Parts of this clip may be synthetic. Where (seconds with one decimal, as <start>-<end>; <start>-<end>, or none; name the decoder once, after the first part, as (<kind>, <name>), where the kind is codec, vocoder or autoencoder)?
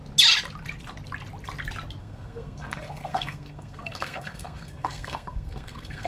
2.0-6.1 (codec, SNAC)